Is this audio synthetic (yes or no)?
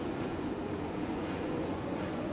yes